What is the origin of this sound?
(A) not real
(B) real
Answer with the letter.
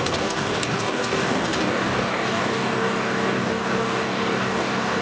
A